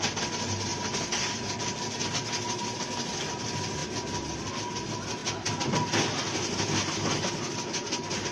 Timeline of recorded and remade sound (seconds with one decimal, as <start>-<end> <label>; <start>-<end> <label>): 0.0-8.3 recorded